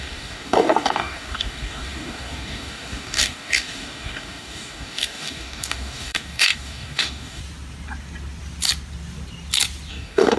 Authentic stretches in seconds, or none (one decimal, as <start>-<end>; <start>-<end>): 7.4-9.9